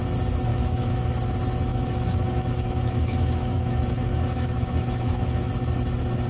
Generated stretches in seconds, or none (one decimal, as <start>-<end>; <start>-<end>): 0.5-1.1; 1.7-5.5

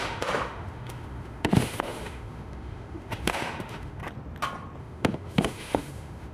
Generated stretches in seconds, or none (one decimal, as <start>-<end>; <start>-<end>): 0.0-4.0; 4.8-6.3

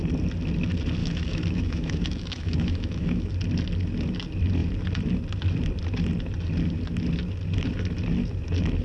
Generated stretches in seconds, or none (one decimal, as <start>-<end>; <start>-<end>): 1.0-3.3

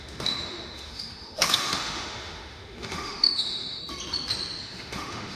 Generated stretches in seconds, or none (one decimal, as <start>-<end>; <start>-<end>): 0.0-3.8; 4.6-5.4

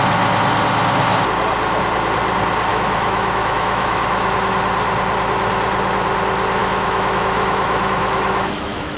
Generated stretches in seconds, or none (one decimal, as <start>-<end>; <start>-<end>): 2.7-4.5; 6.6-9.0

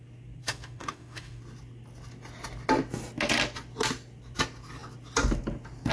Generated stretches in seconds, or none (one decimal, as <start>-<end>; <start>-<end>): 0.4-1.4